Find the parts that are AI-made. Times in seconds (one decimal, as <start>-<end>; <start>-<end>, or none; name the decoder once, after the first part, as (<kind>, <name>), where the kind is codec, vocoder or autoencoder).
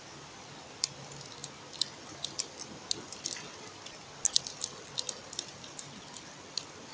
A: none